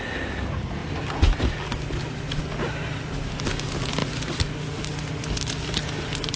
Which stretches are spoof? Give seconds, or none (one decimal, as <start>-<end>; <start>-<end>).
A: none